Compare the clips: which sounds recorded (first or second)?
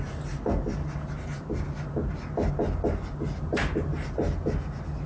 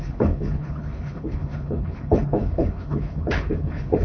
first